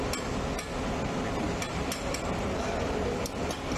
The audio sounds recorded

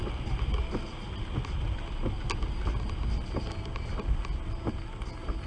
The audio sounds recorded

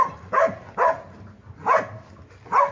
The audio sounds recorded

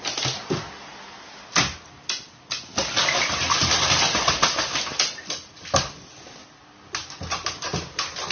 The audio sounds recorded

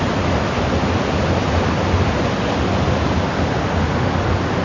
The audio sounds recorded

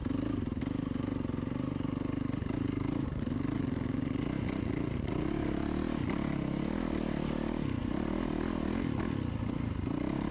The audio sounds recorded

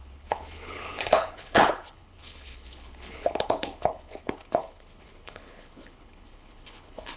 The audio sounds remade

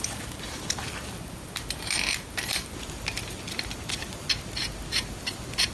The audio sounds recorded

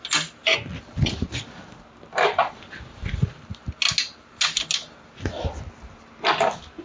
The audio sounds recorded